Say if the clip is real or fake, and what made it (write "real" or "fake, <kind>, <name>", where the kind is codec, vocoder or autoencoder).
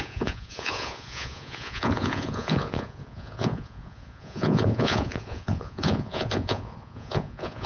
fake, vocoder, Vocos